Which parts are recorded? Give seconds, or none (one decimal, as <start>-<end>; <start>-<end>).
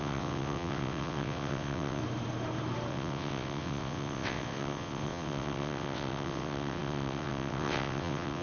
2.0-2.9